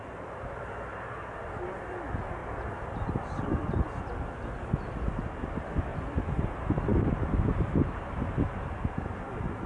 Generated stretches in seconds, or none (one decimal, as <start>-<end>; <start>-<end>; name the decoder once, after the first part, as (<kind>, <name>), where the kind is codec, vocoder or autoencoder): 2.4-4.0 (vocoder, BigVGAN v2); 5.9-6.4; 6.9-8.7